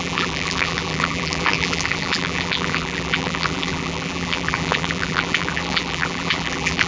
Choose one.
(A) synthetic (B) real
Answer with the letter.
A